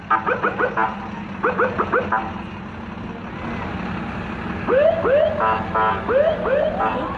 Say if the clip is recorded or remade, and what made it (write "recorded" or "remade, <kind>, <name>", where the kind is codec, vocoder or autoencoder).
recorded